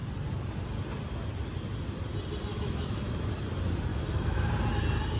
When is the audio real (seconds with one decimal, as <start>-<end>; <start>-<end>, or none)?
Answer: 0.0-2.5; 3.1-3.9; 4.5-5.2